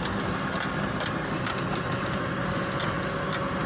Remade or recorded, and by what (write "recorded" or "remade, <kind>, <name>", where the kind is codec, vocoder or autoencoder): recorded